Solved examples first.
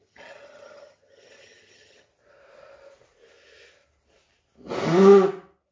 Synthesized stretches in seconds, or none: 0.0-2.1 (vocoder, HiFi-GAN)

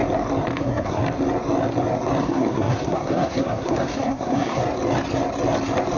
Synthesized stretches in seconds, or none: 0.6-1.0 (codec, SNAC); 2.2-4.6

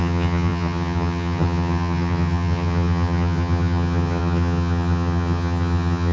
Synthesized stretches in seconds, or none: 0.0-6.1 (vocoder, HiFi-GAN)

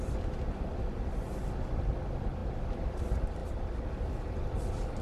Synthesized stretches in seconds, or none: none

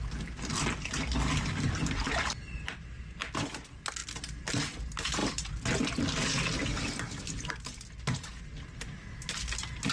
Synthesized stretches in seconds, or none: none